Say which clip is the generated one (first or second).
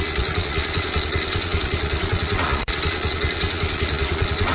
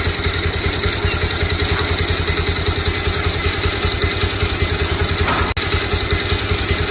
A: first